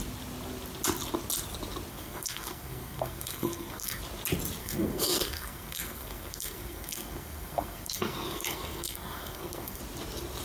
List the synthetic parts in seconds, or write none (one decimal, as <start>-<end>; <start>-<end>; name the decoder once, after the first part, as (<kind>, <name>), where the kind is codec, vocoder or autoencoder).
1.9-4.0 (codec, SNAC); 4.6-9.8